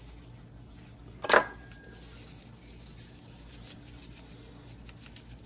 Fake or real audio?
real